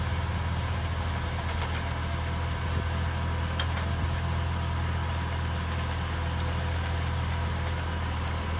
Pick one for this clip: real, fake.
real